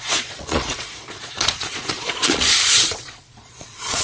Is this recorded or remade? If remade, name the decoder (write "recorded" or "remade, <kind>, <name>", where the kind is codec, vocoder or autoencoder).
remade, vocoder, Vocos